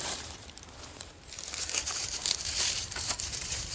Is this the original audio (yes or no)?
no